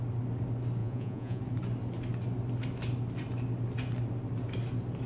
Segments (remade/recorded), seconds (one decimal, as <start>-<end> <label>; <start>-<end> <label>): 0.0-0.8 recorded; 0.8-1.4 remade; 1.4-5.1 recorded